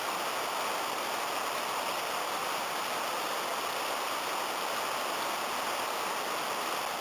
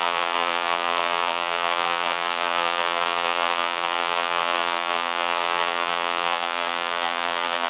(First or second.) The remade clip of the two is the second